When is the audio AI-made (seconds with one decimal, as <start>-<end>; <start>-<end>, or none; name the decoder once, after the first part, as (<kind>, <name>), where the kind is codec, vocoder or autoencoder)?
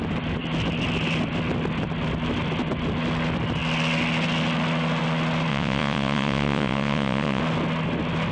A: 5.5-7.4 (vocoder, WaveNeXt)